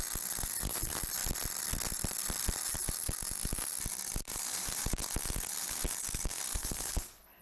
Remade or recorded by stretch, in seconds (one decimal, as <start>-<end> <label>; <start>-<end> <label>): 0.0-6.6 recorded; 6.6-7.4 remade